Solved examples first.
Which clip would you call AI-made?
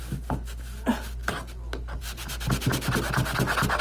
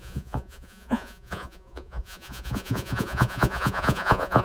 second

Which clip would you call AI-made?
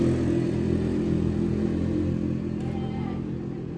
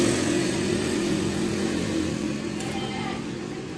second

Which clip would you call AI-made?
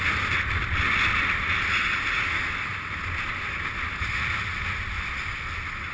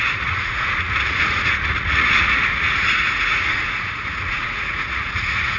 second